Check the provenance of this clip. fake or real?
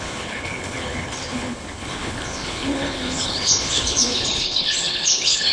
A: fake